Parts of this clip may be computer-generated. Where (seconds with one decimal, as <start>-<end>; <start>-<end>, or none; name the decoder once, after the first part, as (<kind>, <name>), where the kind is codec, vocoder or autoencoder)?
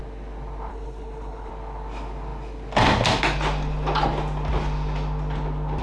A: 0.7-1.5 (codec, HILCodec)